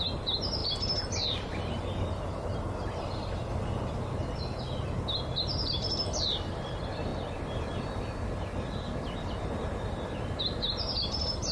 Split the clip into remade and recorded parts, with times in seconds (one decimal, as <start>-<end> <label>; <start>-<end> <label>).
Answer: 0.0-11.5 recorded